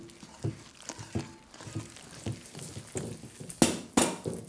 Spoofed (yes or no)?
no